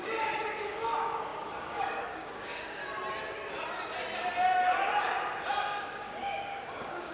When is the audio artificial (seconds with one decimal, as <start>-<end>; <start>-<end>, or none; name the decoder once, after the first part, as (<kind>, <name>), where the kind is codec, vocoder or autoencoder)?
0.0-2.8 (codec, DAC); 5.5-7.1